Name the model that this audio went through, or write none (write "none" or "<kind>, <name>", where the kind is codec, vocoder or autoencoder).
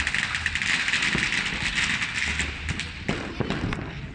none